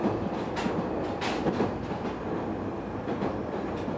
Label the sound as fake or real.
real